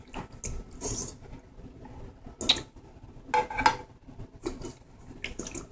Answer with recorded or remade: recorded